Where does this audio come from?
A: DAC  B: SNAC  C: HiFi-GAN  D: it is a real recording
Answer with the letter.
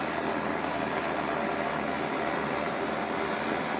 D